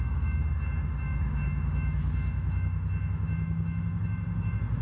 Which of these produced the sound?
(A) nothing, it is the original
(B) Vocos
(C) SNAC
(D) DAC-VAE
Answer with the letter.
D